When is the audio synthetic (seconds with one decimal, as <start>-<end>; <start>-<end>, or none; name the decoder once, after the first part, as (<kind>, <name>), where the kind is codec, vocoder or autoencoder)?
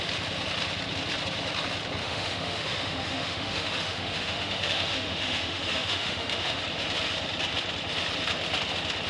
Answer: 2.0-6.6 (autoencoder, DAC-VAE)